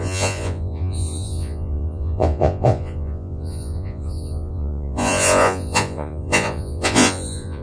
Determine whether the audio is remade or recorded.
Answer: remade